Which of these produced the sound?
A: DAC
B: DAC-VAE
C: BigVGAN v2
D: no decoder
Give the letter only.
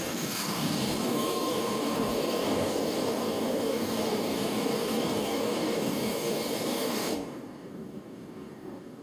A